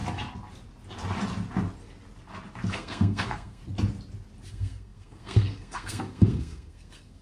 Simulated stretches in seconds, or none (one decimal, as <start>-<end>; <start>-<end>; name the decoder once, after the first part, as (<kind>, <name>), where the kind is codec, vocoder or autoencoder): 2.7-3.6 (codec, SNAC); 4.5-7.2